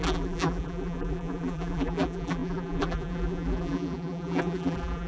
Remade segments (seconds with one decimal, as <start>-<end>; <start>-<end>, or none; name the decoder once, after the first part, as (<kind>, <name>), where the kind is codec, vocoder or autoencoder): 0.0-5.1 (vocoder, BigVGAN v2)